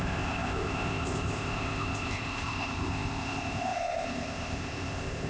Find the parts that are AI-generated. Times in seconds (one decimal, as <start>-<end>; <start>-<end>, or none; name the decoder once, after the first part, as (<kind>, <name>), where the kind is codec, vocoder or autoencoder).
0.0-5.3 (codec, ZipCodec)